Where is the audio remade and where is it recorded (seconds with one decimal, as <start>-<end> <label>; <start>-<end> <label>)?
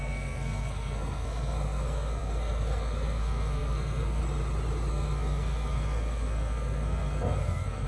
0.0-4.2 remade; 4.2-4.9 recorded; 4.9-7.9 remade